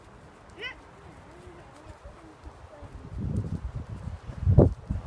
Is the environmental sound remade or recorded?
recorded